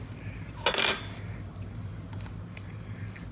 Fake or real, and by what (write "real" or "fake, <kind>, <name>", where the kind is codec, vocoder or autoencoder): real